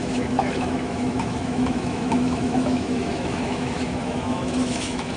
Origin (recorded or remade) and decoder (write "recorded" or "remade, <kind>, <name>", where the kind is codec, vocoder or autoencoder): remade, autoencoder, DAC-VAE